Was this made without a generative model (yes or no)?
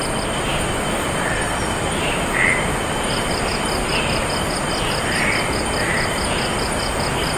yes